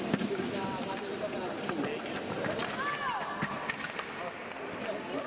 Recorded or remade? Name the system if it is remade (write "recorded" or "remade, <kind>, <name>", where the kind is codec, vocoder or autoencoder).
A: recorded